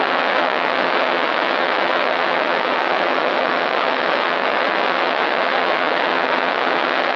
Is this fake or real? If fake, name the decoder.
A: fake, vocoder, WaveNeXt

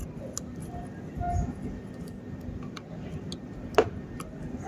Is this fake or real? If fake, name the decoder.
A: real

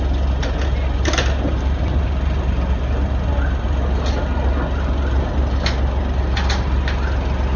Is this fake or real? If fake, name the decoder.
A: real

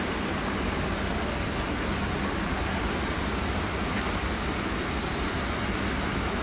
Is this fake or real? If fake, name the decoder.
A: real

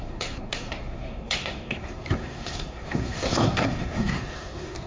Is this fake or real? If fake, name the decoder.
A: fake, codec, SNAC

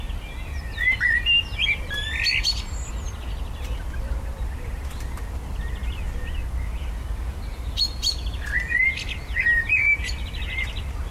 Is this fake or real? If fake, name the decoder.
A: real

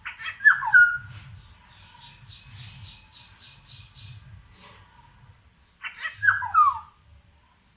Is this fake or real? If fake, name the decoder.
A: real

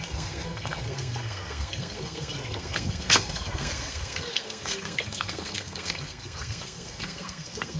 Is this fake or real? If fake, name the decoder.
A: fake, codec, SNAC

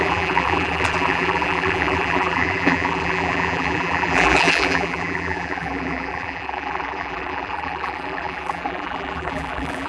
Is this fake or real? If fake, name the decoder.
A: fake, vocoder, BigVGAN v2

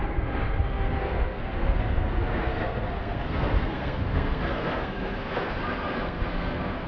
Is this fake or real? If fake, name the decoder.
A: fake, codec, SNAC